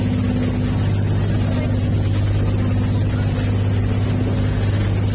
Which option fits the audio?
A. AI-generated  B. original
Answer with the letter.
B